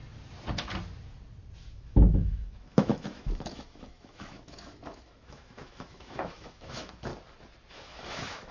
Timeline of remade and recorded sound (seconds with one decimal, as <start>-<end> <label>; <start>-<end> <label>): 0.0-1.7 recorded; 1.7-7.1 remade; 7.1-7.7 recorded; 7.7-8.5 remade